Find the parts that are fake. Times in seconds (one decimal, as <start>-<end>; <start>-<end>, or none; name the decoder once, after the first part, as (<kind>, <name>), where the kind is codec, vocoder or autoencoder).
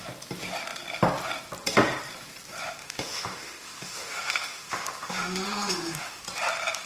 2.8-6.2 (autoencoder, DAC-VAE)